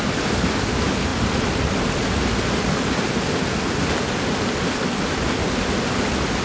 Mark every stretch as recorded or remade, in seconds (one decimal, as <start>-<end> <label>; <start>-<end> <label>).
0.0-6.4 recorded